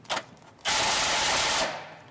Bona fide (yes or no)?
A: yes